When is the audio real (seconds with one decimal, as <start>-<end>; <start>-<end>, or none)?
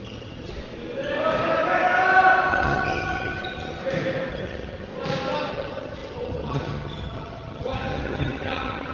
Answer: 0.5-2.5; 3.8-4.3; 4.9-5.5